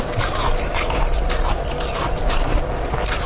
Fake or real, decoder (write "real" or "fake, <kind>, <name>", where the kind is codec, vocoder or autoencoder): fake, vocoder, BigVGAN v2